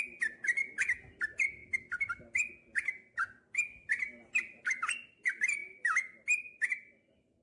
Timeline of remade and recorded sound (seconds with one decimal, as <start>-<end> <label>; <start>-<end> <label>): 0.0-7.4 recorded